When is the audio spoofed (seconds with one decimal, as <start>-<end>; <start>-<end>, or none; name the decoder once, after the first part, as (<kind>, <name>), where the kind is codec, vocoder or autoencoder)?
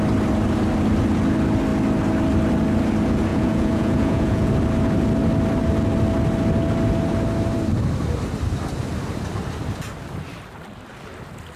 3.3-4.5 (vocoder, Vocos)